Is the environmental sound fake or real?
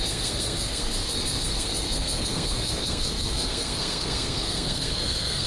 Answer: fake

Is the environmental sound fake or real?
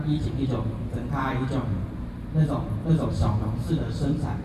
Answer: fake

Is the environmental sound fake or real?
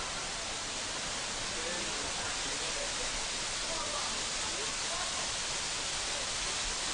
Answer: real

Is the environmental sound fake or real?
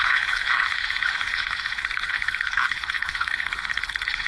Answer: fake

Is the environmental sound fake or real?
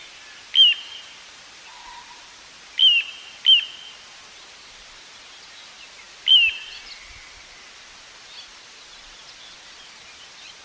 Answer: real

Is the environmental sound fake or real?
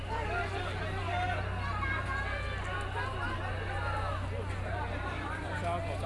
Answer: real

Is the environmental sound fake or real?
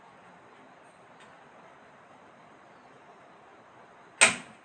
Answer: real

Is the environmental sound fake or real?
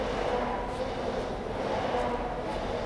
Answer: real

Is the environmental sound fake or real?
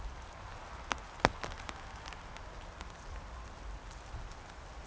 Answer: real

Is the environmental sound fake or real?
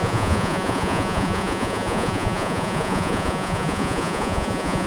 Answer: fake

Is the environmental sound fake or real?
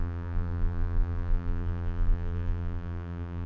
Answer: fake